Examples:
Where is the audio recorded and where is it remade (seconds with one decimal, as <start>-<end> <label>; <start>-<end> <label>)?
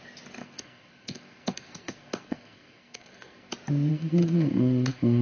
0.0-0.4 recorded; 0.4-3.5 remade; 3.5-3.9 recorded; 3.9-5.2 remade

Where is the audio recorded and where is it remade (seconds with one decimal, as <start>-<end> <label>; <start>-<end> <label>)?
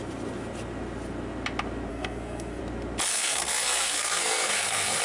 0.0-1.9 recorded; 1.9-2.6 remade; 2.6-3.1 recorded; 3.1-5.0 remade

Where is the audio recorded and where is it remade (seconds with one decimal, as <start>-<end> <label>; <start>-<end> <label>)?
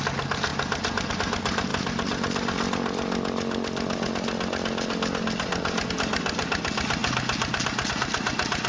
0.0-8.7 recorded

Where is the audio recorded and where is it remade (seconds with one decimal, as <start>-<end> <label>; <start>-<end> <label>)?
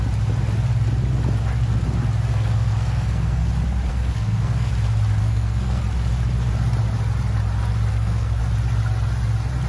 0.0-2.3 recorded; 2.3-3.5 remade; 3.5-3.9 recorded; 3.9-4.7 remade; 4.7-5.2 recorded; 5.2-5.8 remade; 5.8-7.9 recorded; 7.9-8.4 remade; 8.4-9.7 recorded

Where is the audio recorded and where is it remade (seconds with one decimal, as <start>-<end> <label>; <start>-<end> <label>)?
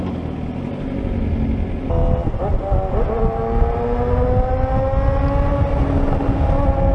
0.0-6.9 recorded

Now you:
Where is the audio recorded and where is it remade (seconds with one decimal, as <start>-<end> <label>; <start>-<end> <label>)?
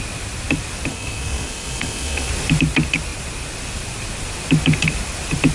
0.0-0.9 recorded; 0.9-2.3 remade; 2.3-5.5 recorded